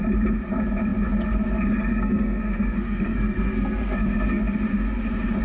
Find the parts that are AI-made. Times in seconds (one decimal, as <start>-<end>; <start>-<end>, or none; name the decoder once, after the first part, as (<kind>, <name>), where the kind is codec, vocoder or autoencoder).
1.9-4.4 (codec, SNAC)